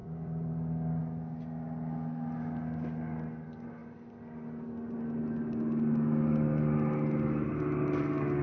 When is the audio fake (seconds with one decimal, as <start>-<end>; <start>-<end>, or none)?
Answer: 0.0-1.0

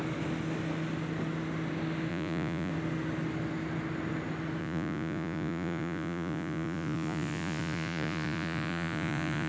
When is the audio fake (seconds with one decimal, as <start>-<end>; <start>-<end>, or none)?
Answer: 2.1-2.7; 4.6-9.5

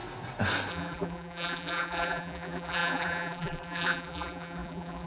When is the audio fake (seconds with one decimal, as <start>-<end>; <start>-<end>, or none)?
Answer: 0.7-5.1

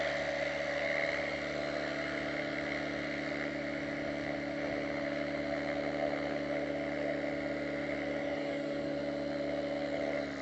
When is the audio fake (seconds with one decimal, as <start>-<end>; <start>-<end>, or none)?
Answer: 8.2-9.0

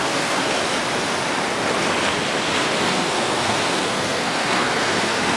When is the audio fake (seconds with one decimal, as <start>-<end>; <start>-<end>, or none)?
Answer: 0.0-0.6; 2.8-5.4